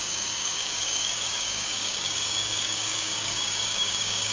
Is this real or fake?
fake